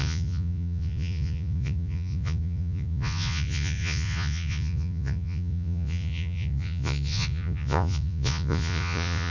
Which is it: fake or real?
fake